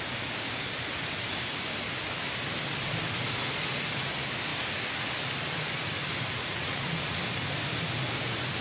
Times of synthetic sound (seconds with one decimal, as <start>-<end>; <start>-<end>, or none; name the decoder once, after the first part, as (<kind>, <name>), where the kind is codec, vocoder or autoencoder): 6.4-7.2 (vocoder, Vocos)